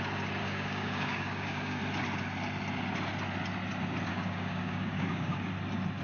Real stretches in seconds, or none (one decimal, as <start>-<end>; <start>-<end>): 0.0-0.4; 1.8-4.1; 5.5-6.0